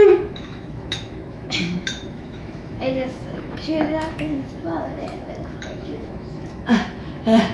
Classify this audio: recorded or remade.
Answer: remade